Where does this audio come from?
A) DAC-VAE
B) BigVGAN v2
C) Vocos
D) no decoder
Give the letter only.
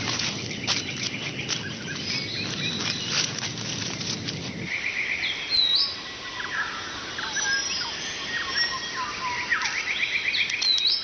D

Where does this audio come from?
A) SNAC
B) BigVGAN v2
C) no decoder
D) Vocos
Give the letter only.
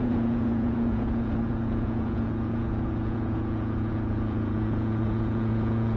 D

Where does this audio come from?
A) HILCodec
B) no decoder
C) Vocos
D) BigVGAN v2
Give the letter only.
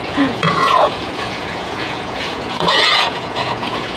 C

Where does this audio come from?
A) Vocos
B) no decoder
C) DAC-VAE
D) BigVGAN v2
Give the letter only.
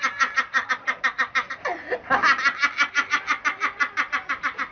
B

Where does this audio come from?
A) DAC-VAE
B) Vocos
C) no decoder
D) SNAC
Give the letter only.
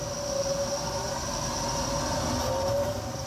C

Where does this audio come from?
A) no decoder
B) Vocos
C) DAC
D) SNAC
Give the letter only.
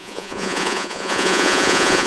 B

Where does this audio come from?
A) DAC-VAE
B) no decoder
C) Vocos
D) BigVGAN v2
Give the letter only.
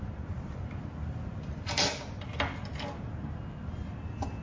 B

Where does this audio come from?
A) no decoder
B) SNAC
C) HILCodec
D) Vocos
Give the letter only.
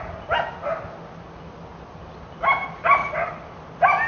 A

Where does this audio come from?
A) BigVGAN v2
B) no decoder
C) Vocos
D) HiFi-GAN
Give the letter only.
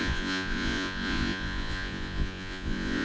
C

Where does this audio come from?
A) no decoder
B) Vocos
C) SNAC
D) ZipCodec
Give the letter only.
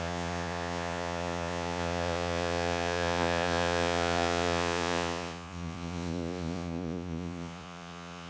B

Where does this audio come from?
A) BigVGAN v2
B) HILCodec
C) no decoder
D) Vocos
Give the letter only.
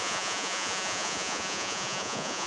D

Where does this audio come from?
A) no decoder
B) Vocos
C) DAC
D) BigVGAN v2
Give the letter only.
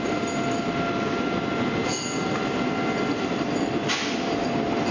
A